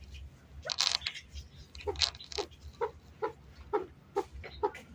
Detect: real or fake real